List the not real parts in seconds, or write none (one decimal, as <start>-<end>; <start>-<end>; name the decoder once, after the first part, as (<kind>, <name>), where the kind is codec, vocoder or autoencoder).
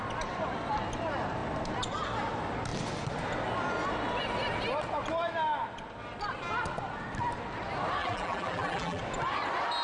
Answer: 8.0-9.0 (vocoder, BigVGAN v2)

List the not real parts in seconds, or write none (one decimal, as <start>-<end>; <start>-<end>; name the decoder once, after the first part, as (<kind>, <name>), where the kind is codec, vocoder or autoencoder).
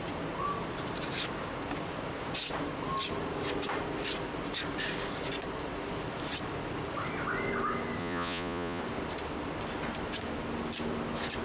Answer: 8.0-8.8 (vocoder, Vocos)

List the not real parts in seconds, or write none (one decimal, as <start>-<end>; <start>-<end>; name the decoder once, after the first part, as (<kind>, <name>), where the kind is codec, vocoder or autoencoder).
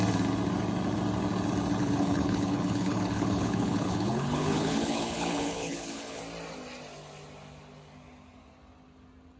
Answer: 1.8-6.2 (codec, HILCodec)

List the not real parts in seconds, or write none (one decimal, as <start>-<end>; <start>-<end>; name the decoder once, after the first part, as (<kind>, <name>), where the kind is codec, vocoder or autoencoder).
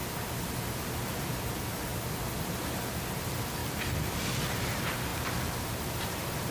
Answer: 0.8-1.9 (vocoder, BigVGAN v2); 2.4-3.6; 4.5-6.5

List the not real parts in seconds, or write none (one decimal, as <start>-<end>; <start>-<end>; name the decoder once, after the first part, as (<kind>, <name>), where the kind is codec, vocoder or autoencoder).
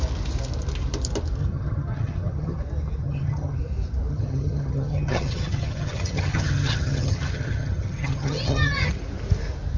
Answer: 1.4-2.6 (vocoder, HiFi-GAN); 3.0-3.6; 4.1-8.9